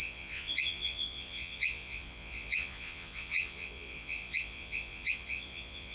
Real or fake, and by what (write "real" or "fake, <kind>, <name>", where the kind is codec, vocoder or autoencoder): fake, vocoder, Vocos